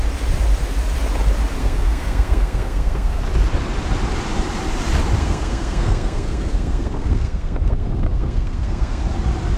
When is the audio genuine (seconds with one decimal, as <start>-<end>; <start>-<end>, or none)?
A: 0.0-1.6; 3.2-5.2; 9.0-9.6